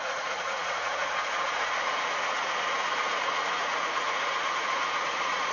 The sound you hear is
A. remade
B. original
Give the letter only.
A